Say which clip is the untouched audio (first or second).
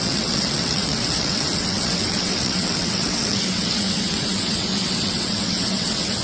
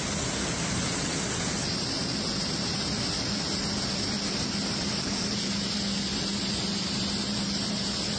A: second